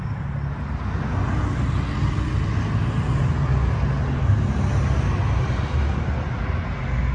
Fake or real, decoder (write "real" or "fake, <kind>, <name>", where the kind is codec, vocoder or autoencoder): real